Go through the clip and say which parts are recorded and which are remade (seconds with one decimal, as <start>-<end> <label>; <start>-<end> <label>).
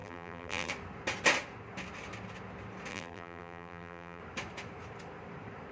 0.0-0.7 remade; 0.7-2.9 recorded; 2.9-4.2 remade; 4.2-5.7 recorded